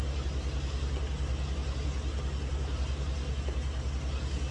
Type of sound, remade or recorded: recorded